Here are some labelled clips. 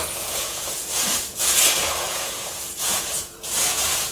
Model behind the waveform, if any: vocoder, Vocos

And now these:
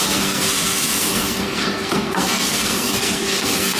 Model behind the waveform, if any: codec, SNAC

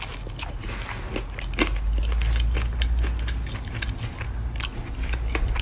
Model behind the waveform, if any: none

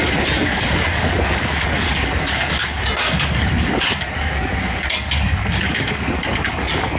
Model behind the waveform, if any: codec, DAC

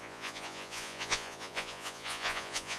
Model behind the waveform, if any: vocoder, Vocos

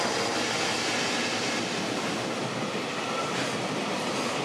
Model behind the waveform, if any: none